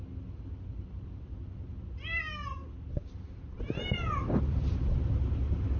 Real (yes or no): yes